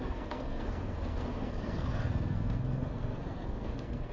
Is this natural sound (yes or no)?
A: no